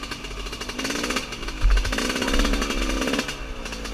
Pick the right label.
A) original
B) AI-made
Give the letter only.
A